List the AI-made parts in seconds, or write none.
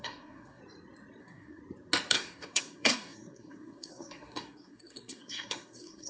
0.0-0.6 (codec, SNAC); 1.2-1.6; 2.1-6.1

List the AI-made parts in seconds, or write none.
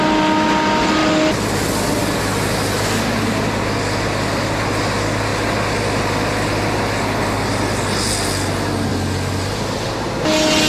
none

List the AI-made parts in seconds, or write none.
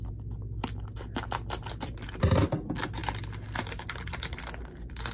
none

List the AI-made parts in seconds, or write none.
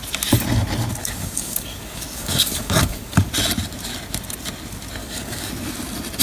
1.0-3.3 (codec, DAC); 5.0-5.5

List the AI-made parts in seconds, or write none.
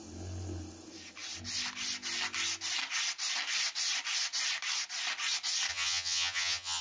5.7-6.8 (vocoder, HiFi-GAN)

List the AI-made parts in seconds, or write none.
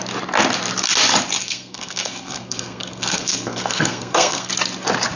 1.4-4.5 (codec, SNAC)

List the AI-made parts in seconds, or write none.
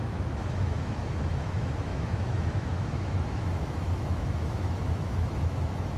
0.0-6.0 (autoencoder, DAC-VAE)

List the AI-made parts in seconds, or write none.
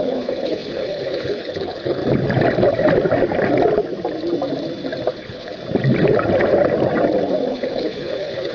0.0-2.0 (codec, HILCodec); 5.1-5.5; 7.5-8.5